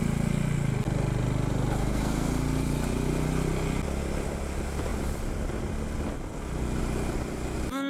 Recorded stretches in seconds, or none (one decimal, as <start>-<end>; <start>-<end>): 0.0-1.8; 2.3-7.9

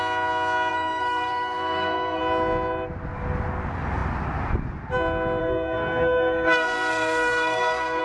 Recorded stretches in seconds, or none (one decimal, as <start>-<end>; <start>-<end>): 0.0-0.7; 2.2-5.4